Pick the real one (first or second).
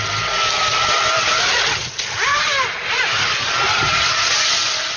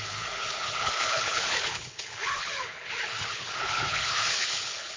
first